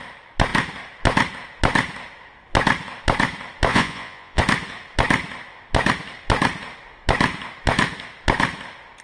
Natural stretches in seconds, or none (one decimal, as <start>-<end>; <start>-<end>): 0.0-3.7; 4.4-9.0